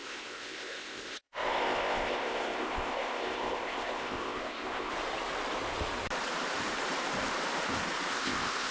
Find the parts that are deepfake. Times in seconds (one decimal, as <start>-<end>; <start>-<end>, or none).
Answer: 0.0-4.9; 8.1-8.7